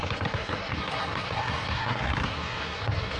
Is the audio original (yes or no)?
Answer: no